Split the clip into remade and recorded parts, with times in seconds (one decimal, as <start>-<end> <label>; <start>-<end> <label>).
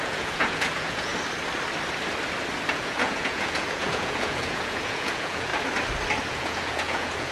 0.0-1.1 remade; 1.1-2.7 recorded; 2.7-5.5 remade; 5.5-6.3 recorded; 6.3-7.3 remade